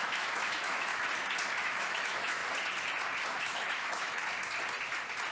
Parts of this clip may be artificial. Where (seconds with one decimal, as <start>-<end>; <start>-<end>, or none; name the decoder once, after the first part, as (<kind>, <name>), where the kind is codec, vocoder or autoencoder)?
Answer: 0.0-0.9 (autoencoder, DAC-VAE); 1.6-2.4; 3.4-4.2